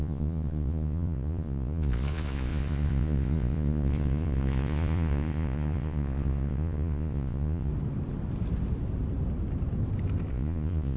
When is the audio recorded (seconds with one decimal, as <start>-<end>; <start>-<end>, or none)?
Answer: 7.7-10.3